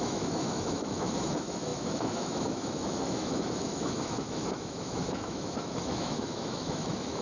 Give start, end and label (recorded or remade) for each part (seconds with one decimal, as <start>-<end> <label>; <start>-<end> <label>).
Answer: 0.0-7.2 remade